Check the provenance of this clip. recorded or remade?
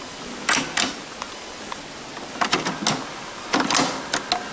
recorded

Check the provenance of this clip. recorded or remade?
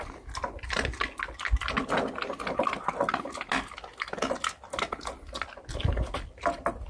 recorded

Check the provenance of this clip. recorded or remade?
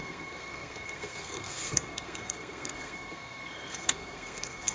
remade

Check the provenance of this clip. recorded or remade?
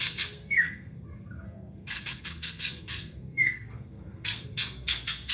remade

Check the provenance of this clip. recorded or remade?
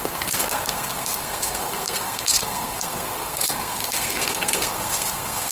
remade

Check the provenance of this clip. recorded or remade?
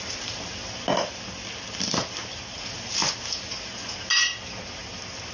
recorded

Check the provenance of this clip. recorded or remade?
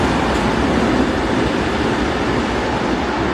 recorded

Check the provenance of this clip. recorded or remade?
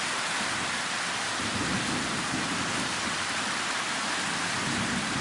recorded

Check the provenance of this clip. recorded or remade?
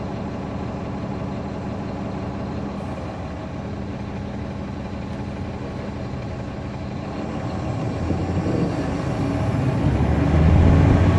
recorded